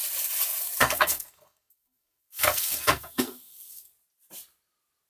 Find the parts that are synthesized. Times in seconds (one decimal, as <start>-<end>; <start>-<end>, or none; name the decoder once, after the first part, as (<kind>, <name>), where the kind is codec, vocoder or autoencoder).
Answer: 0.8-3.9 (codec, SNAC)